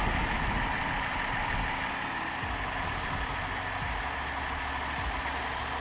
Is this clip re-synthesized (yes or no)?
no